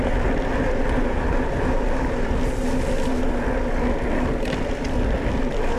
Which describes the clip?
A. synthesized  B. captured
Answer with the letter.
B